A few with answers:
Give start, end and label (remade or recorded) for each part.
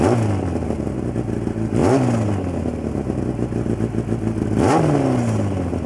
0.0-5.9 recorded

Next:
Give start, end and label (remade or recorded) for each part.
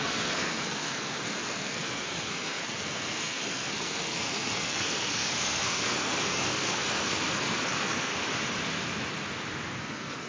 0.0-8.1 remade; 8.1-9.8 recorded; 9.8-10.3 remade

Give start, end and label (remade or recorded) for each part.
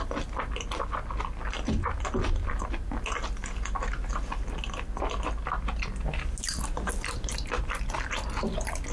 0.0-8.9 recorded